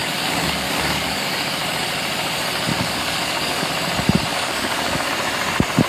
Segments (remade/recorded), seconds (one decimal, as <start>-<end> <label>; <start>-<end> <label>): 0.0-1.5 remade; 1.5-2.7 recorded; 2.7-3.7 remade; 3.7-4.3 recorded; 4.3-5.1 remade; 5.1-5.9 recorded